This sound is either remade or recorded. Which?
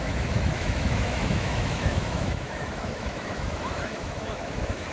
remade